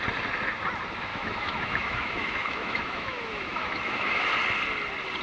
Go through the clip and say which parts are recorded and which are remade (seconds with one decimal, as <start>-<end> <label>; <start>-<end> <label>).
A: 0.0-1.1 recorded; 1.1-4.2 remade; 4.2-5.2 recorded